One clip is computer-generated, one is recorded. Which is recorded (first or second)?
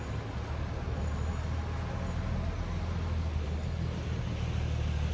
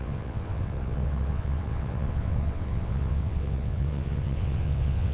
first